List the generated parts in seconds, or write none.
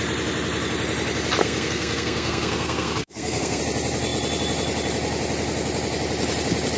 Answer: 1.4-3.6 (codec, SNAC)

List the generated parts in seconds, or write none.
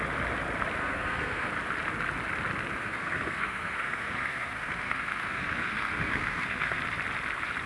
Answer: 0.8-1.5 (codec, SNAC); 2.8-6.8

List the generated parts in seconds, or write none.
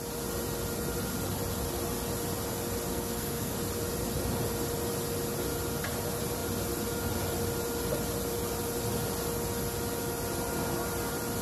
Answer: 2.9-3.5 (codec, SNAC)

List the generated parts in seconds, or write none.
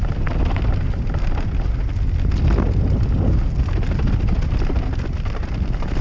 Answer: none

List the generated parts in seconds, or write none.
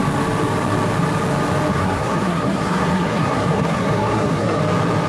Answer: 1.7-4.6 (codec, SNAC)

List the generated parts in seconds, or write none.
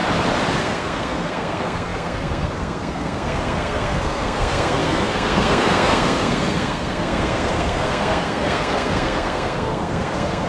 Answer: 0.6-10.5 (codec, SNAC)